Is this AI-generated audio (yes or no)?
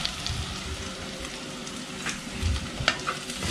yes